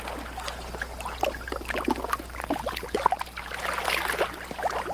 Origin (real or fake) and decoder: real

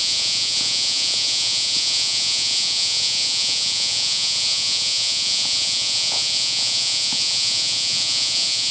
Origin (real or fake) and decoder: fake, vocoder, Vocos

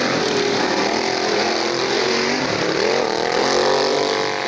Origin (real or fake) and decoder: real